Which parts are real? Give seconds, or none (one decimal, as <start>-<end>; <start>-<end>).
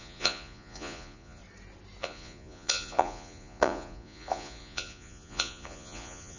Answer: 1.4-2.0